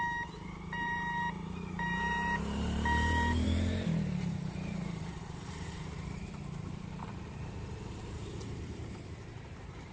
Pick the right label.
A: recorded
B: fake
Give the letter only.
B